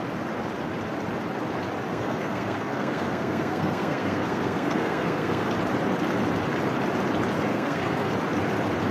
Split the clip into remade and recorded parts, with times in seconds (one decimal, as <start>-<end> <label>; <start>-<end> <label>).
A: 0.0-1.9 recorded; 1.9-5.5 remade; 5.5-7.5 recorded; 7.5-8.1 remade; 8.1-8.9 recorded